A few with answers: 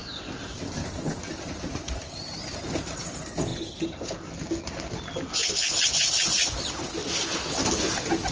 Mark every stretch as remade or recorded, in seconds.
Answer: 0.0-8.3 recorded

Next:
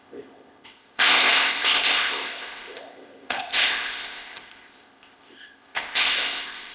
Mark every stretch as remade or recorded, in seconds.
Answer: 0.0-6.7 remade